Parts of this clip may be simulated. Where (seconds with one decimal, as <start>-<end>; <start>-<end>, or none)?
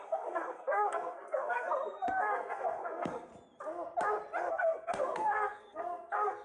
0.0-3.3; 4.5-6.4